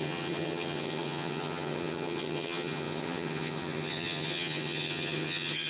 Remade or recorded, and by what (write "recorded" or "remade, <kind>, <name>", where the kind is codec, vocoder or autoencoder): remade, vocoder, HiFi-GAN